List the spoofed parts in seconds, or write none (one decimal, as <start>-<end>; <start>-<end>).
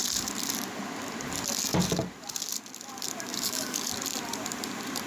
3.3-3.9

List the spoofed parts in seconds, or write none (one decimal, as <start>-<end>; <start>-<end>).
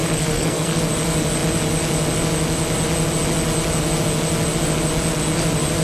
0.0-0.8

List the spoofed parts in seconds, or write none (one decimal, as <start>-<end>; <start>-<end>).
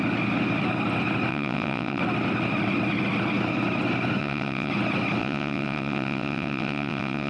1.3-2.0; 4.2-4.7; 5.2-7.3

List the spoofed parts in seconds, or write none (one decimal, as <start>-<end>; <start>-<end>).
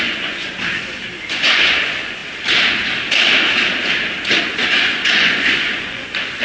0.0-0.5; 1.3-2.2; 4.4-6.4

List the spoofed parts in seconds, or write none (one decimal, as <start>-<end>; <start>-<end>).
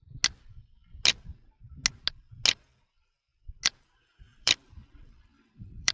4.3-5.9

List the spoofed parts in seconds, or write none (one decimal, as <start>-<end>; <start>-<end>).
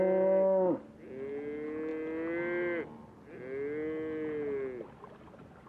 none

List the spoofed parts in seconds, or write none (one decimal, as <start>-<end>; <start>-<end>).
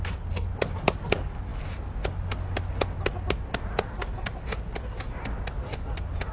none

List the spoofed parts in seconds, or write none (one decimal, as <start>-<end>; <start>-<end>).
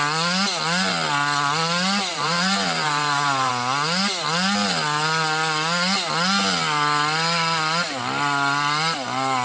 2.1-3.5